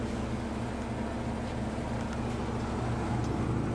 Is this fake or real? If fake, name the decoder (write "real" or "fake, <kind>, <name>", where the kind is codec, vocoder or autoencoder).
real